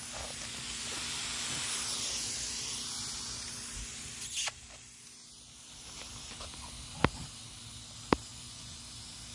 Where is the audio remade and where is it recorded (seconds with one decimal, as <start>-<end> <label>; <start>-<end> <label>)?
0.0-8.3 recorded; 8.3-8.8 remade; 8.8-9.3 recorded